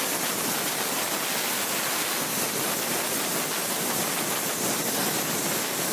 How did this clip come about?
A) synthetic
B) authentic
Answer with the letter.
B